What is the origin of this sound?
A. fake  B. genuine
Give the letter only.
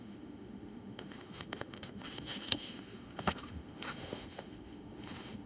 A